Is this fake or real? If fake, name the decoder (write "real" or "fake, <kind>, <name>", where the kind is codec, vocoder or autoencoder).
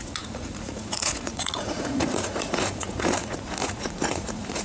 fake, vocoder, Vocos